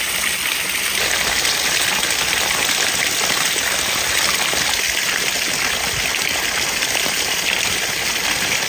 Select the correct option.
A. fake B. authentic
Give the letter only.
B